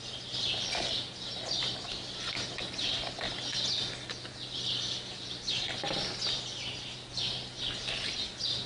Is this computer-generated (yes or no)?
no